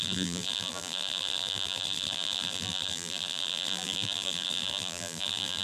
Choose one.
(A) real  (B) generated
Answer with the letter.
B